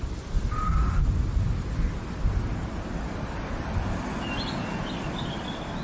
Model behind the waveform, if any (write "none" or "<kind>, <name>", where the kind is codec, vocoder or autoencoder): none